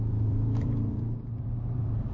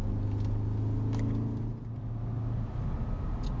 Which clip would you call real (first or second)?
second